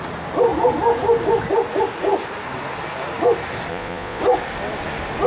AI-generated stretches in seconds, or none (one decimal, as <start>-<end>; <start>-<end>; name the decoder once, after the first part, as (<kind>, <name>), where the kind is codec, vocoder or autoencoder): 3.7-4.2 (vocoder, Vocos)